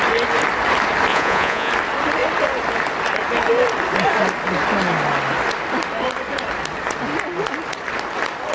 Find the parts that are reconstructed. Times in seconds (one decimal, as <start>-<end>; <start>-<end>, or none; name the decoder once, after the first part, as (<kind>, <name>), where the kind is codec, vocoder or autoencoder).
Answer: 1.1-1.7 (vocoder, Vocos)